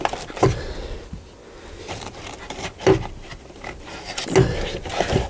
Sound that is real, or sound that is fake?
real